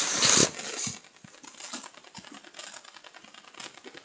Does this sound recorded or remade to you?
recorded